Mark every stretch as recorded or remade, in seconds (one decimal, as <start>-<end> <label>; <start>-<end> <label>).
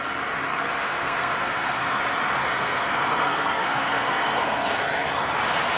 0.0-0.5 recorded; 0.5-2.0 remade; 2.0-2.4 recorded; 2.4-4.8 remade; 4.8-5.8 recorded